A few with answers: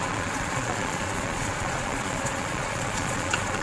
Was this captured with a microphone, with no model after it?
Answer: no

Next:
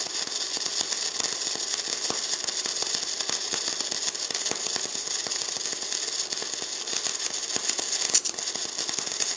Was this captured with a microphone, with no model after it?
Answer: yes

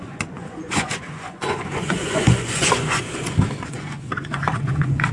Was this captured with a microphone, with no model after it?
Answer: no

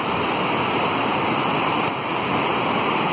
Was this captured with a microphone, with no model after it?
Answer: yes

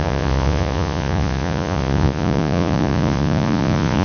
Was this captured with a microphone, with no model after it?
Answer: no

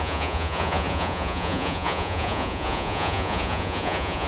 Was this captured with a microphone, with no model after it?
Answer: no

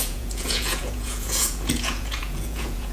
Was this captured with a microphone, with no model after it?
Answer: no